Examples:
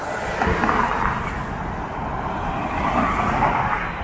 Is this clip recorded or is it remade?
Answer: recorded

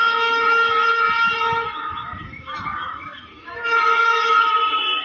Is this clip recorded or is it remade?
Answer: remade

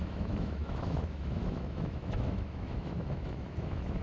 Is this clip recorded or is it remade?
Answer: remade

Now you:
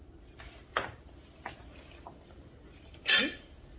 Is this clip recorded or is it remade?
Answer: recorded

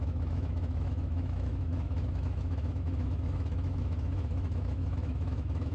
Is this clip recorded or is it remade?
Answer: remade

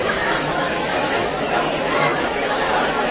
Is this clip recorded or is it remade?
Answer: remade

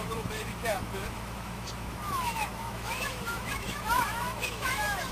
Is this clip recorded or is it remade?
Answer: remade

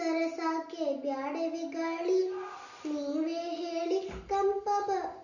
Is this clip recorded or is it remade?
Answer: recorded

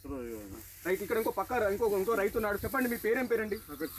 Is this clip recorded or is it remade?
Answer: recorded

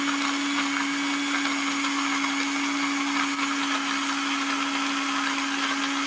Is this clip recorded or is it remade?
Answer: recorded